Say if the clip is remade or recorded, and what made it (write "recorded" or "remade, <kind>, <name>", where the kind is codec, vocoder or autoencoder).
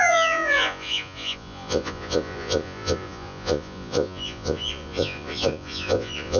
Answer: remade, vocoder, Vocos